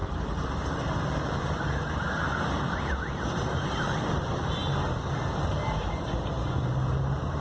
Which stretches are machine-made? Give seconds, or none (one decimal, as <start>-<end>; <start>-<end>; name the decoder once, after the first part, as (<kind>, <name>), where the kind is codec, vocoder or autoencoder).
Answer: 0.0-7.4 (vocoder, BigVGAN v2)